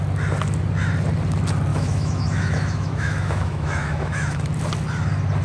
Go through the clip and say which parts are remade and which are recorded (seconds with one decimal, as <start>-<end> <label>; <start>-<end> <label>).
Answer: 0.0-1.7 recorded; 1.7-4.4 remade; 4.4-5.4 recorded